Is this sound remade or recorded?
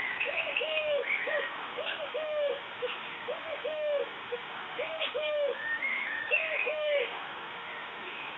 remade